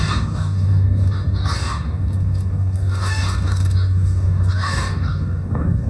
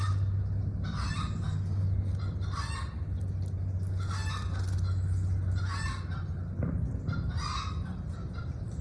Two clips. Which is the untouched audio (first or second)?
second